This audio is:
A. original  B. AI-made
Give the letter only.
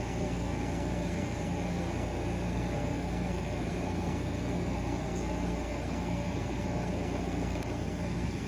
B